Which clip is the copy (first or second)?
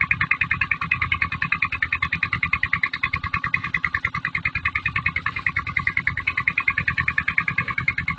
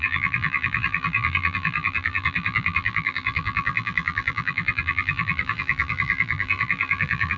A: second